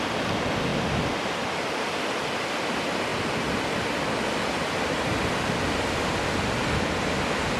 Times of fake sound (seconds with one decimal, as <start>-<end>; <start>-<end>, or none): 3.1-3.9